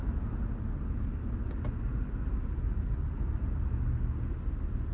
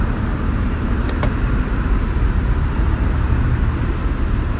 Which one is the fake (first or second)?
second